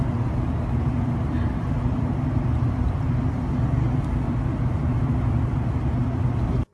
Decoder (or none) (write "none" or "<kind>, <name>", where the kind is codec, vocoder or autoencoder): none